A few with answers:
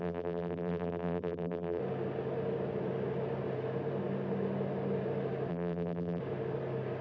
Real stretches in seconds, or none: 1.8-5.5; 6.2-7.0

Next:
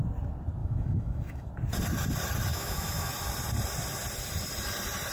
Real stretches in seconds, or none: 0.0-0.6; 1.5-2.5; 3.1-5.1

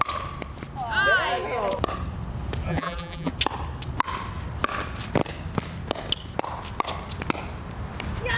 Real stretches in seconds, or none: 0.0-2.7; 3.3-8.4

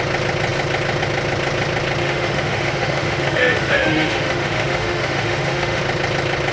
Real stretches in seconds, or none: 0.0-2.0; 5.8-6.5

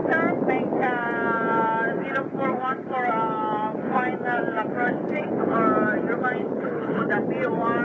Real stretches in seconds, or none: 0.0-6.4; 7.0-7.8

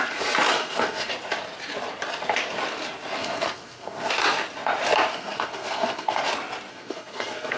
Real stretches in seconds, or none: 0.0-0.5; 1.1-3.2; 4.1-5.1; 6.2-6.7

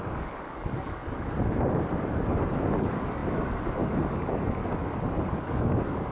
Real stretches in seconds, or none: 1.0-2.8; 4.6-5.3

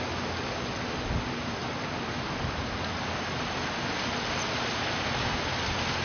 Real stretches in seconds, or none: 0.0-6.0